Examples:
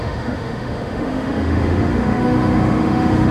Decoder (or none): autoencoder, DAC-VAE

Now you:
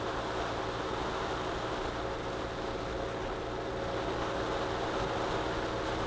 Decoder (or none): none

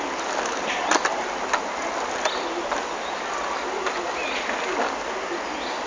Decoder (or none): none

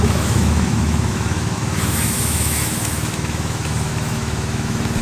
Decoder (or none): autoencoder, DAC-VAE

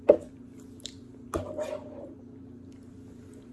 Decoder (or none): none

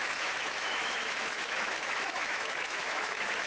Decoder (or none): autoencoder, DAC-VAE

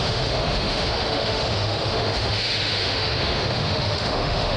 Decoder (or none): autoencoder, DAC-VAE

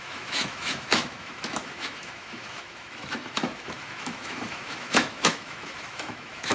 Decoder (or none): autoencoder, DAC-VAE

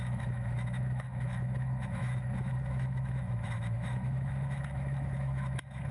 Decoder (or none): autoencoder, DAC-VAE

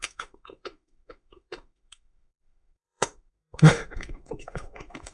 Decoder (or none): autoencoder, DAC-VAE